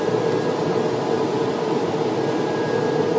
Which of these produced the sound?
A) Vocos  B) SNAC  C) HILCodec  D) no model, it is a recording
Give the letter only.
D